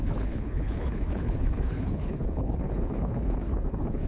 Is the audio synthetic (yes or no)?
yes